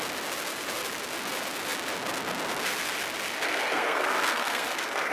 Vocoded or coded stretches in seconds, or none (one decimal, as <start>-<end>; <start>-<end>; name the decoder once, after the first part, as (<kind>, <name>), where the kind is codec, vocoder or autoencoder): 3.7-5.1 (codec, SNAC)